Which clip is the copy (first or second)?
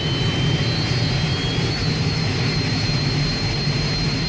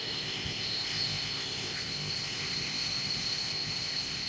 second